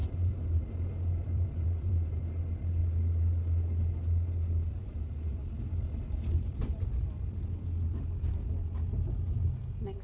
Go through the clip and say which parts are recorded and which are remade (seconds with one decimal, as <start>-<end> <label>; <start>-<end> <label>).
0.0-2.2 remade; 2.2-4.8 recorded; 4.8-5.4 remade; 5.4-10.0 recorded